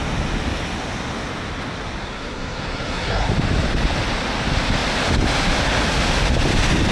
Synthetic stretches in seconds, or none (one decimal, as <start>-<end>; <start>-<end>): 2.0-3.3